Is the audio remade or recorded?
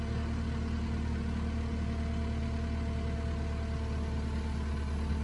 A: recorded